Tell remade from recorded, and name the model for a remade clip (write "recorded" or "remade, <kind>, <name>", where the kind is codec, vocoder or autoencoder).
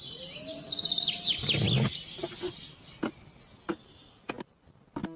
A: recorded